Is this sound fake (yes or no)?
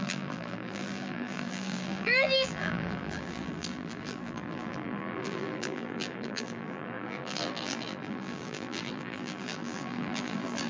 yes